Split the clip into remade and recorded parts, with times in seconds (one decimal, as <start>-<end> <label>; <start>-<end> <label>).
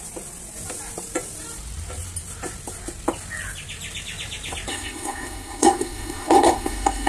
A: 0.0-4.7 recorded; 4.7-7.1 remade